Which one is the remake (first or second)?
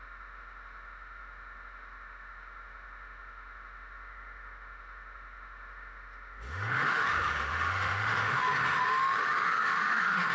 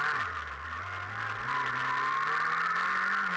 first